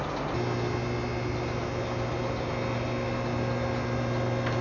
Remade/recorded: recorded